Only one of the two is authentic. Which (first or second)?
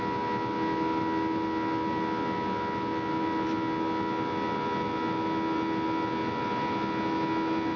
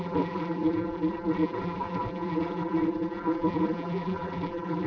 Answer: first